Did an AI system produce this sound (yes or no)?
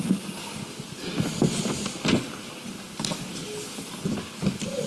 no